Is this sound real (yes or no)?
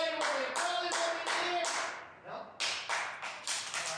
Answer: yes